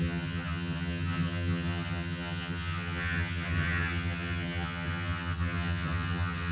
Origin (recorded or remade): remade